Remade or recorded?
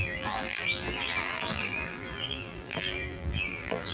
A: remade